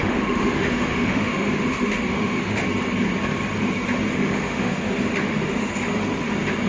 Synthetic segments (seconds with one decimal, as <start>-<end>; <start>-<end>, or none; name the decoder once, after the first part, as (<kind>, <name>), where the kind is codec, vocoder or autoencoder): 0.0-2.6 (autoencoder, DAC-VAE); 4.1-5.7